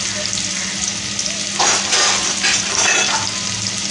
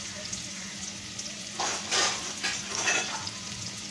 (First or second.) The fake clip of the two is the second